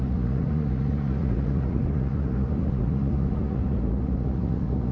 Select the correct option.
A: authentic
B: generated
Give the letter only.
B